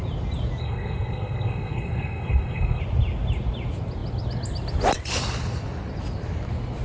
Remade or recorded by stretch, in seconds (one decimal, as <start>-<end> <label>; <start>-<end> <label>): 0.0-0.6 recorded; 0.6-2.8 remade; 2.8-6.8 recorded